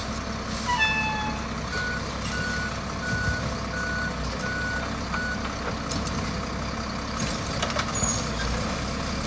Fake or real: real